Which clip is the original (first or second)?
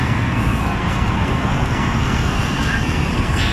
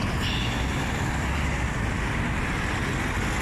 second